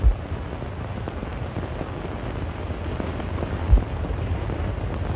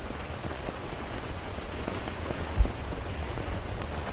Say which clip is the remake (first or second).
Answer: second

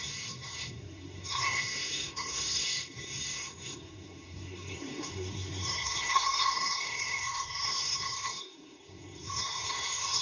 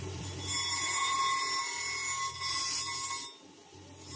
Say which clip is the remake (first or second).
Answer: first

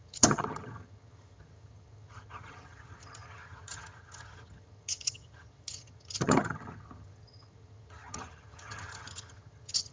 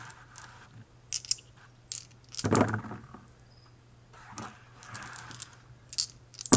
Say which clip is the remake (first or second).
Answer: first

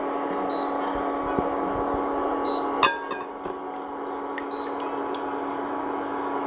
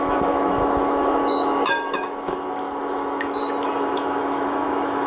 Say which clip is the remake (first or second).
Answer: second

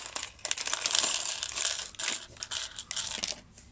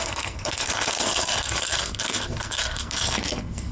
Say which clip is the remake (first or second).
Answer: second